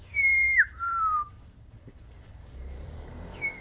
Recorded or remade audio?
remade